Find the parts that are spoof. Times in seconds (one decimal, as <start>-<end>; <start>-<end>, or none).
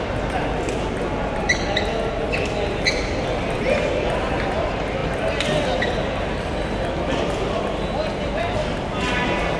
none